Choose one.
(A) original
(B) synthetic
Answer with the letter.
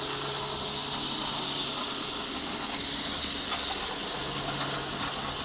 A